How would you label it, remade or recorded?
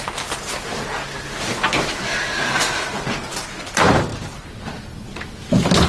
recorded